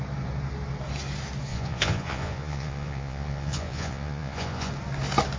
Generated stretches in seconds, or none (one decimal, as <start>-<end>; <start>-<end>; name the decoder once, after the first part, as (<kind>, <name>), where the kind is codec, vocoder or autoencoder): 1.5-4.7 (vocoder, Vocos)